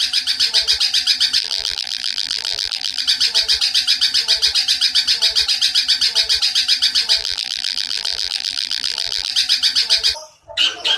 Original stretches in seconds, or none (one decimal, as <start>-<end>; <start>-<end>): 0.0-1.4; 3.0-7.2; 9.3-11.0

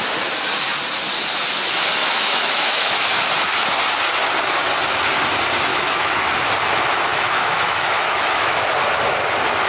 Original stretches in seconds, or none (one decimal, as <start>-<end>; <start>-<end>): 0.0-2.0; 3.2-5.7; 6.3-7.1; 8.5-9.7

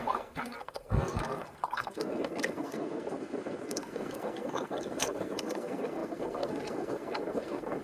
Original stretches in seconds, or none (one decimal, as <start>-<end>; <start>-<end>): none

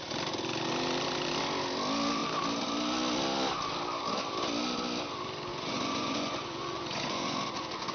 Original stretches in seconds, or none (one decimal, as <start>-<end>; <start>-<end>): 0.0-5.5